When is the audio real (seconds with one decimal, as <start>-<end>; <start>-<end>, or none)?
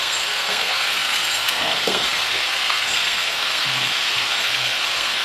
none